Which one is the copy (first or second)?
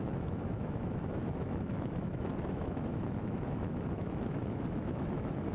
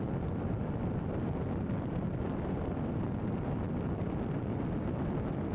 first